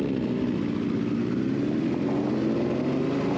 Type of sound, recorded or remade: recorded